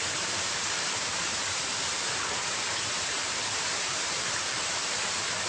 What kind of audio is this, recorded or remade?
remade